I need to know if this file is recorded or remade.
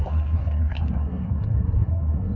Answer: remade